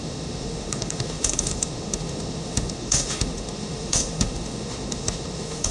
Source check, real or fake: fake